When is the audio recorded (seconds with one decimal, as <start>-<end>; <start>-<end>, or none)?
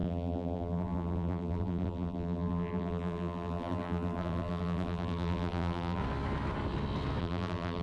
6.0-7.2